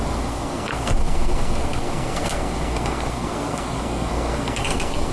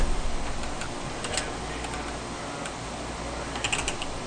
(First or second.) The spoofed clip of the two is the first